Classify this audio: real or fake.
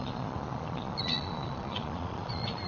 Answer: fake